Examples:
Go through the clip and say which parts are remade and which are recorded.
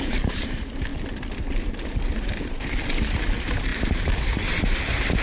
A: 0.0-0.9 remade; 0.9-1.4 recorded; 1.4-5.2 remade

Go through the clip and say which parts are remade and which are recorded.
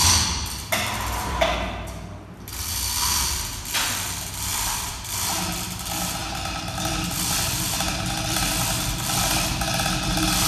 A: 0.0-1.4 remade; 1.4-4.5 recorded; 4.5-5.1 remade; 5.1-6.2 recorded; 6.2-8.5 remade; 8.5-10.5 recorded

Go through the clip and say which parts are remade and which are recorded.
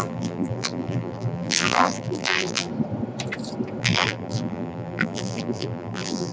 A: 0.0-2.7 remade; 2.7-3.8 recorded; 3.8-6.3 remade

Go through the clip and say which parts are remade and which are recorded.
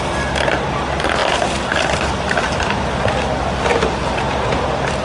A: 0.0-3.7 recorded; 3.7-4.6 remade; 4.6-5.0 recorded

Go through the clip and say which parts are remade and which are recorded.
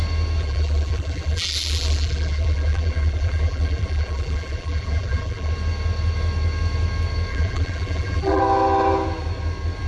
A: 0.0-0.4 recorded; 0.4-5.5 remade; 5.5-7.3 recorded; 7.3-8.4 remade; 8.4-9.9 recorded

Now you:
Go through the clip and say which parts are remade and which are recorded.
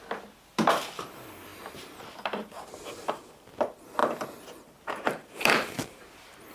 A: 0.0-6.5 remade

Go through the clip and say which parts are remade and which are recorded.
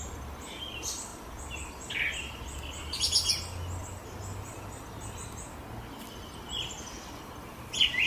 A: 0.0-8.1 recorded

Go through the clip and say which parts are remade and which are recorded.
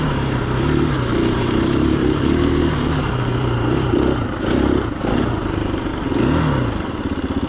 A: 0.0-5.9 remade; 5.9-7.5 recorded